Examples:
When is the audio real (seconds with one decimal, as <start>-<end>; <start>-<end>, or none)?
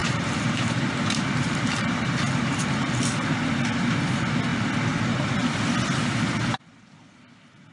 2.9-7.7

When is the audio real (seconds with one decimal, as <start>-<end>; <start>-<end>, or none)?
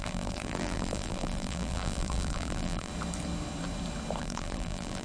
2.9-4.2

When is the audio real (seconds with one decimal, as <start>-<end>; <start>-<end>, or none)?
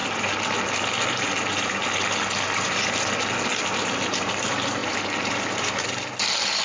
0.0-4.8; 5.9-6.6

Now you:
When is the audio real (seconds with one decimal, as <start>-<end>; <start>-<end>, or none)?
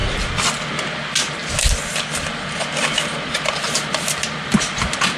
0.0-5.2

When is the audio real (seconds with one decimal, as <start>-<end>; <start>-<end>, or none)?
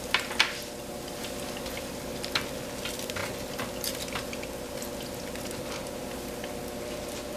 0.0-7.4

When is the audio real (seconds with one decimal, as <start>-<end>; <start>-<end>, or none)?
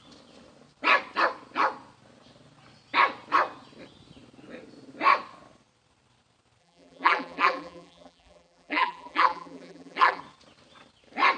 0.0-6.6; 10.2-11.4